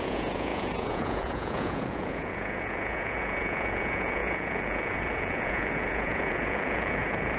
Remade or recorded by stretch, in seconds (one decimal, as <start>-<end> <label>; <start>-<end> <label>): 0.0-7.4 remade